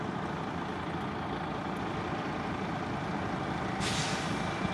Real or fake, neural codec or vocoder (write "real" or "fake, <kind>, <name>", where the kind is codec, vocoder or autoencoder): real